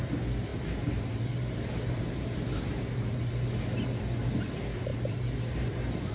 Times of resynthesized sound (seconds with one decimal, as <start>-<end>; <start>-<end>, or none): 0.5-3.2; 4.9-6.1